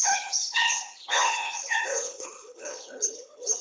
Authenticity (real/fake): fake